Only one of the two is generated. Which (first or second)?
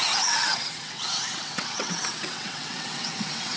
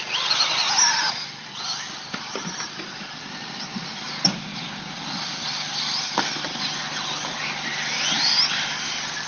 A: first